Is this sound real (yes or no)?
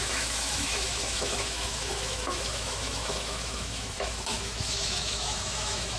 no